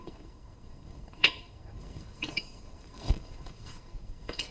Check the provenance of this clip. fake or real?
fake